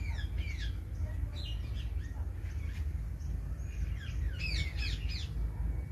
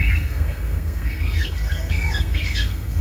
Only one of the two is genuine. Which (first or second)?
first